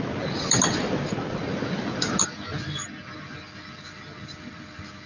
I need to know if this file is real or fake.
real